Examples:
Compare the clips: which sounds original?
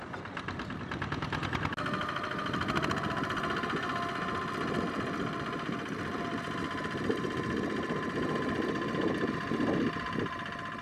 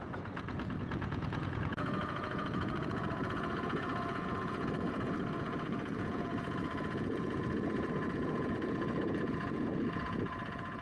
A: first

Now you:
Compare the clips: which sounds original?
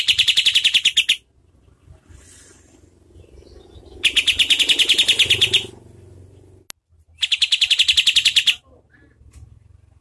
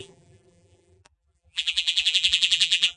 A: first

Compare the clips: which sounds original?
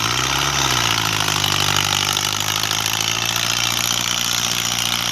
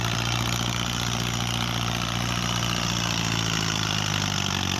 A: first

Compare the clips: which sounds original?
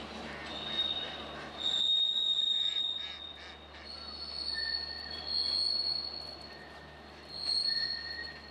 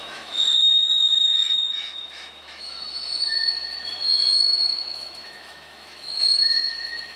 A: first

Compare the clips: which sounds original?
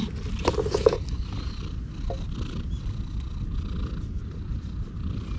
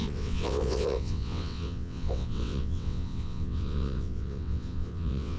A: first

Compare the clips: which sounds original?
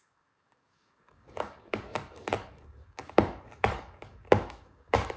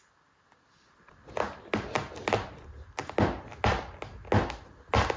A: second